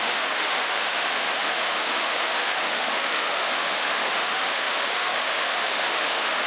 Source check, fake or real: fake